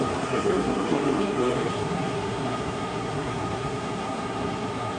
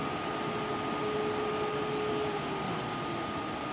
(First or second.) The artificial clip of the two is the first